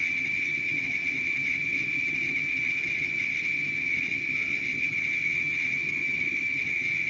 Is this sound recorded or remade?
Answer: remade